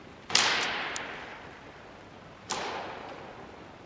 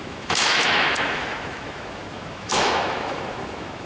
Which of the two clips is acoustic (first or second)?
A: first